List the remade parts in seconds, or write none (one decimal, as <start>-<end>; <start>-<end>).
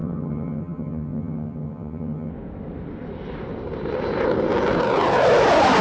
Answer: 0.0-2.3